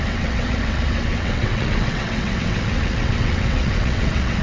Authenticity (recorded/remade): remade